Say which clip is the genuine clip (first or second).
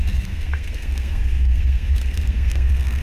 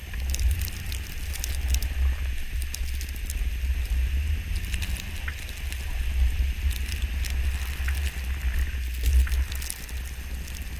second